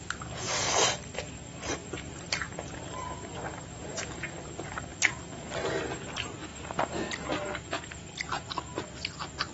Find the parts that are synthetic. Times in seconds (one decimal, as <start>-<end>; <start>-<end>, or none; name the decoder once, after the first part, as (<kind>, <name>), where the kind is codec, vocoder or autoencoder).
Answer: 1.8-4.0 (vocoder, BigVGAN v2); 4.9-5.5; 6.5-7.3